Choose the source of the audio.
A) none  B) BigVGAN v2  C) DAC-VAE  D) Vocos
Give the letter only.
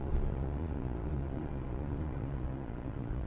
D